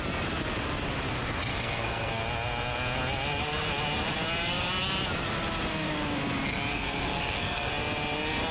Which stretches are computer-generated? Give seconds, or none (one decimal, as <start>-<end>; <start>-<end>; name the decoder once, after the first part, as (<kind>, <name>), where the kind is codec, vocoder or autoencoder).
1.5-2.2 (codec, SNAC); 6.7-7.7